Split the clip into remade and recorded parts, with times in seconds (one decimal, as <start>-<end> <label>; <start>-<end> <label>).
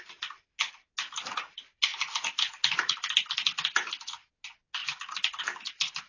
0.0-6.1 recorded